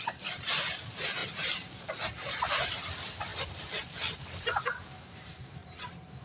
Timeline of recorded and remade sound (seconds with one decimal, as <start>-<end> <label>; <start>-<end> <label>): 0.0-1.2 remade; 1.2-2.6 recorded; 2.6-3.3 remade; 3.3-4.4 recorded; 4.4-5.6 remade; 5.6-6.2 recorded